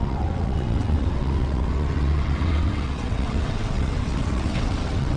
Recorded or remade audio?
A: remade